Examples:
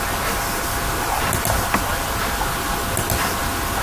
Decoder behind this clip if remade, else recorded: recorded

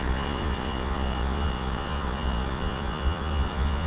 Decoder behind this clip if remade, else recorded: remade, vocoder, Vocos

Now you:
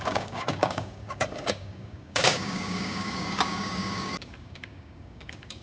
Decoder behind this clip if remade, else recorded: remade, codec, DAC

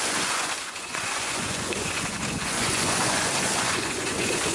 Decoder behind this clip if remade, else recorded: remade, vocoder, Vocos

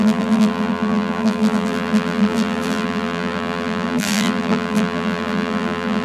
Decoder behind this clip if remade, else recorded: remade, vocoder, BigVGAN v2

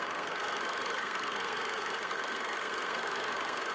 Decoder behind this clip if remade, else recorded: remade, codec, SNAC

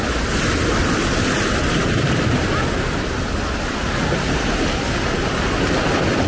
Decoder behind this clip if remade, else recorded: recorded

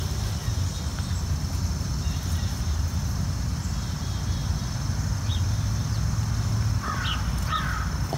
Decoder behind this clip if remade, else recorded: recorded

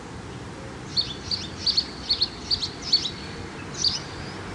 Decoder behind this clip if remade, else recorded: recorded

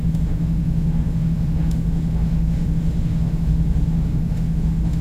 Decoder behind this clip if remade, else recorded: remade, autoencoder, DAC-VAE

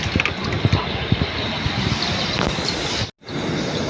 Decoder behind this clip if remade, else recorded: recorded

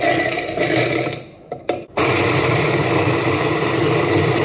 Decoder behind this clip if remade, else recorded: recorded